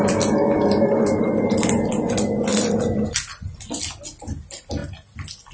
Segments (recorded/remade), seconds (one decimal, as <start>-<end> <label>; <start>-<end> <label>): 0.0-5.5 recorded